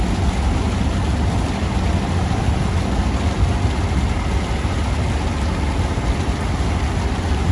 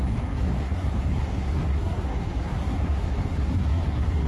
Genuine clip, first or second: first